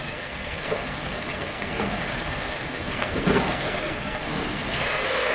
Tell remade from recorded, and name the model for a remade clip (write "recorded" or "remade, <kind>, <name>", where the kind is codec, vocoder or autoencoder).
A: remade, codec, SNAC